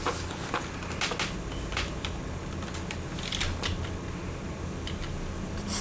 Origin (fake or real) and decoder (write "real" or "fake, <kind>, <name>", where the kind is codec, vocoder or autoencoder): real